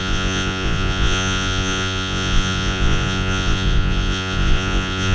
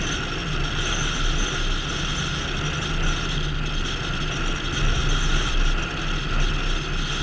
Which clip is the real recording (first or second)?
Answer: second